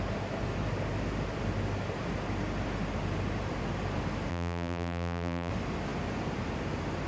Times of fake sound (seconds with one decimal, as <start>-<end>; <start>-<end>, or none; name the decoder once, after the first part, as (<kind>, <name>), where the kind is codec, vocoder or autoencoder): 4.3-5.5 (vocoder, BigVGAN v2)